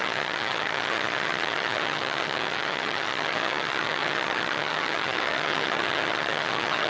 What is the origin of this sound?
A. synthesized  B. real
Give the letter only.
A